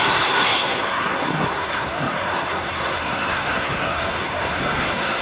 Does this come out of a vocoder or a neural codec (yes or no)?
yes